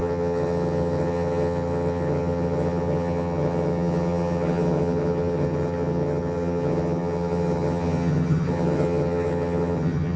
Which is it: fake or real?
fake